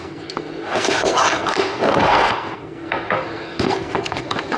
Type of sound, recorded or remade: remade